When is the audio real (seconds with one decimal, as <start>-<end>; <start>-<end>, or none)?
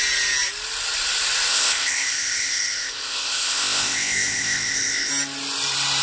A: 0.0-1.5; 5.1-6.0